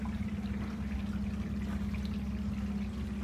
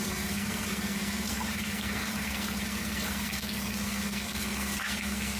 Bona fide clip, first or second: first